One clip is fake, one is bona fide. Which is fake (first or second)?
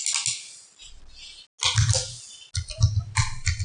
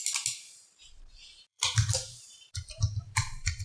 second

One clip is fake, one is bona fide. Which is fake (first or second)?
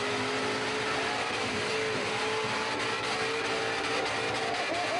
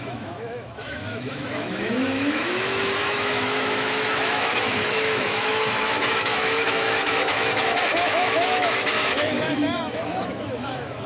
second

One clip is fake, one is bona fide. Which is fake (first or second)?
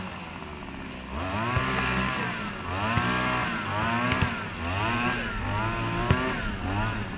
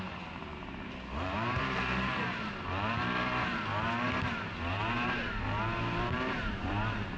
second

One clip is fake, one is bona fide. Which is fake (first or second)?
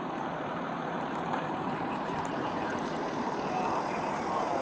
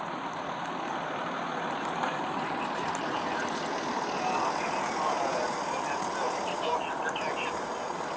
first